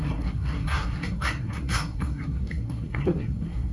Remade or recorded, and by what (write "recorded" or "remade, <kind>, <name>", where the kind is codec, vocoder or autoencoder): remade, codec, SNAC